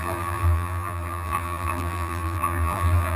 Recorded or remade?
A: remade